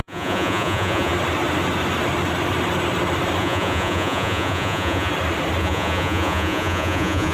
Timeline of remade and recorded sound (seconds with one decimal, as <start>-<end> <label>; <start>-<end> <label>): 0.0-1.1 remade; 1.1-3.4 recorded; 3.4-5.1 remade; 5.1-5.6 recorded; 5.6-7.3 remade